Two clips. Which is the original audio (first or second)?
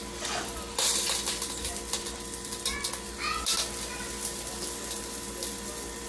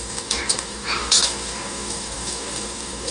first